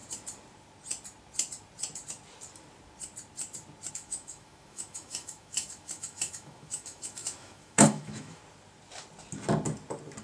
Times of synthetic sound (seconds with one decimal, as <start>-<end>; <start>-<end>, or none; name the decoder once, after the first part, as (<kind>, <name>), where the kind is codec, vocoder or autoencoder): 3.9-8.4 (autoencoder, DAC-VAE)